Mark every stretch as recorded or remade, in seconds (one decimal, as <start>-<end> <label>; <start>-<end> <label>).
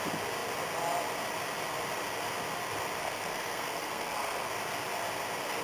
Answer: 0.0-3.0 recorded; 3.0-4.5 remade; 4.5-5.6 recorded